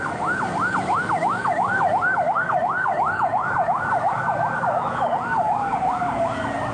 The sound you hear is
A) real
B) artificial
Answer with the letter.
B